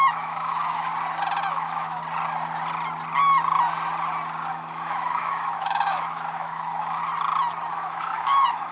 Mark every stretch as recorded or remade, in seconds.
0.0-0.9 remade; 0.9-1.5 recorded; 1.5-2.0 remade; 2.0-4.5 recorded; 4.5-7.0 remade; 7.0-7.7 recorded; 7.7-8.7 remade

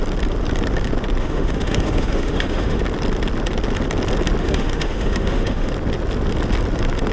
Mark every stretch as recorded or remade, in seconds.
0.0-1.2 recorded; 1.2-2.8 remade; 2.8-4.4 recorded; 4.4-5.7 remade; 5.7-7.1 recorded